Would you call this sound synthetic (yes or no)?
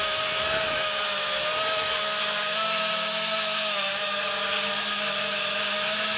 yes